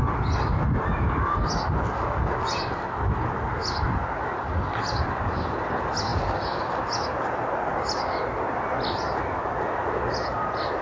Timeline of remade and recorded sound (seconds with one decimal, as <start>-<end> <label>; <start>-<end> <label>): 0.0-10.8 recorded